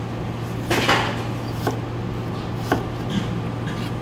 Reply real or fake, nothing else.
real